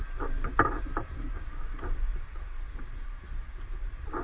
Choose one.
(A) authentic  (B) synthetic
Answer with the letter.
B